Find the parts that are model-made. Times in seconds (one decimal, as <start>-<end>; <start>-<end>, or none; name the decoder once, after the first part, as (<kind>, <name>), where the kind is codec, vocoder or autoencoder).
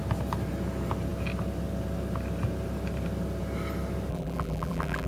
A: 4.1-5.1 (vocoder, BigVGAN v2)